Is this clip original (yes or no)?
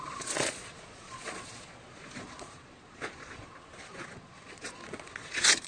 no